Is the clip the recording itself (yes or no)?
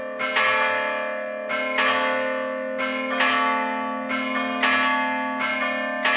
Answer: yes